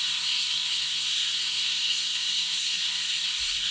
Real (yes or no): no